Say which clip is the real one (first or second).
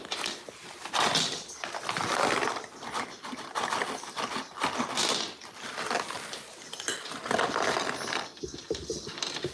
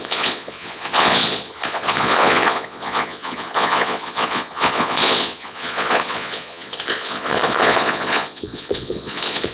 first